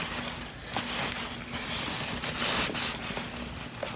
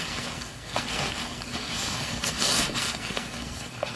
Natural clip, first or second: first